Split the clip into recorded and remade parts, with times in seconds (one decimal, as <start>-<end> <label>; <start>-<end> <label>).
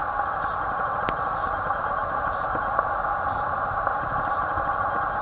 0.0-5.2 recorded